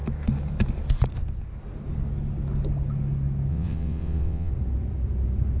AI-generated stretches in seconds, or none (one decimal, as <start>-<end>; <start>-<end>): 3.5-4.5